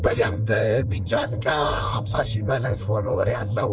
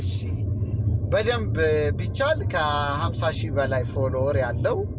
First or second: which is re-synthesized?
first